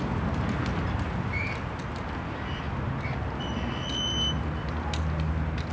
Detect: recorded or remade recorded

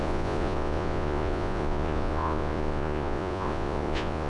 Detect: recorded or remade remade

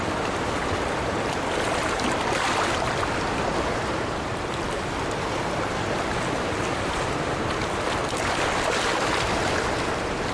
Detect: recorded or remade recorded